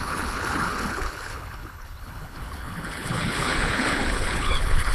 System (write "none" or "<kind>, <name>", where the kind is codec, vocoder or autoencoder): codec, HILCodec